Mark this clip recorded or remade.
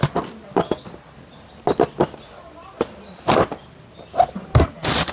recorded